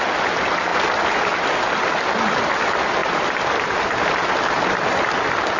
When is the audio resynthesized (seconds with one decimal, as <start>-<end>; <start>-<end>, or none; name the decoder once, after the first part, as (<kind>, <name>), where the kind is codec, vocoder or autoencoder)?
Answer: none